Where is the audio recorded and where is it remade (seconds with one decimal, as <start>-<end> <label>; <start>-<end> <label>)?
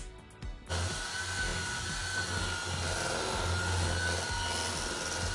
0.0-5.3 recorded